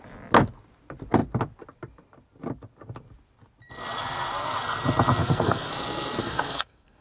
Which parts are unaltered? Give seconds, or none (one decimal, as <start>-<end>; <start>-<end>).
0.0-5.2; 5.7-6.2